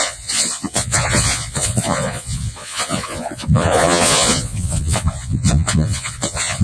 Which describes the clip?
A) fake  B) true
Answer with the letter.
A